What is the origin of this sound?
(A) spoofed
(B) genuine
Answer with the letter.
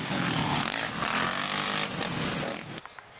B